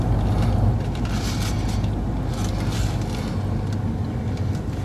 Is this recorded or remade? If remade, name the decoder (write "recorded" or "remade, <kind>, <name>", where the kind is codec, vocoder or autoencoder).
recorded